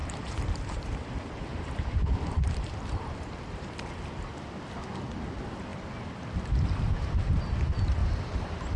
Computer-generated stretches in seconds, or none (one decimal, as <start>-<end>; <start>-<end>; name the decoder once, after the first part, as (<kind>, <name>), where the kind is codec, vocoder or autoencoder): 0.0-4.2 (vocoder, BigVGAN v2); 8.0-8.8